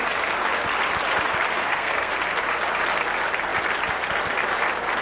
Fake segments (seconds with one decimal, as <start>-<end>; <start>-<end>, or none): 1.6-2.1